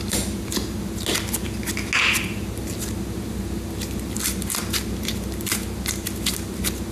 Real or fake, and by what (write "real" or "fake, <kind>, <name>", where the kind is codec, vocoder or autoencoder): real